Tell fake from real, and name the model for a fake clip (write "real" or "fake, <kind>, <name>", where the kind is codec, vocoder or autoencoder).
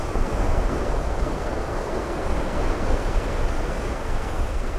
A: fake, codec, SNAC